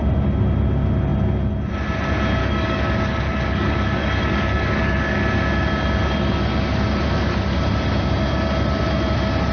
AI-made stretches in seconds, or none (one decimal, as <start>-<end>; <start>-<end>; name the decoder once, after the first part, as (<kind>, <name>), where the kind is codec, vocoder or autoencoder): 2.4-5.2 (codec, DAC)